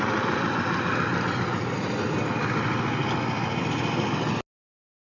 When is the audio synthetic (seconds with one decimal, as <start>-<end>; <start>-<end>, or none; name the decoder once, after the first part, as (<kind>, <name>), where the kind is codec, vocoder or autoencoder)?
none